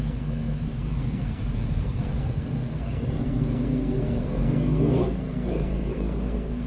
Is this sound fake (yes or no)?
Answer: yes